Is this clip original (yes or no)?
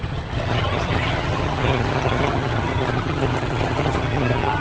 no